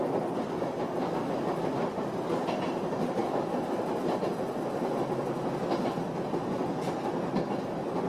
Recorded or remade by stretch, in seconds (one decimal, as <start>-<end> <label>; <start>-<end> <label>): 0.0-8.1 recorded